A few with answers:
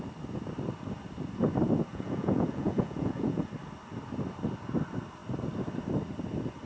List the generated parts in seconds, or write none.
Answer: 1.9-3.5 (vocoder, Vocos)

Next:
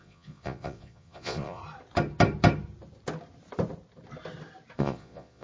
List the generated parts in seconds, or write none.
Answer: 0.0-1.6 (vocoder, Vocos); 4.8-5.4

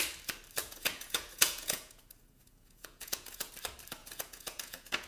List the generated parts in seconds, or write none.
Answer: 0.6-3.5 (vocoder, Vocos); 4.0-5.1

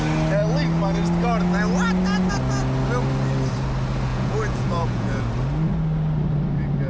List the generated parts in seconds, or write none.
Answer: 4.1-5.2 (vocoder, Vocos)

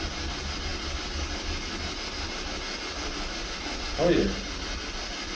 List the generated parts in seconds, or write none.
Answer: none

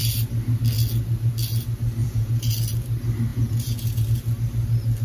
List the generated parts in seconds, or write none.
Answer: 2.0-2.5 (vocoder, Vocos); 3.3-4.0